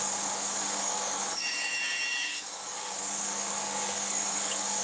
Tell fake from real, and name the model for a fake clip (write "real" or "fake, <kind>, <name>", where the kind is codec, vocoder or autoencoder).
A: fake, codec, DAC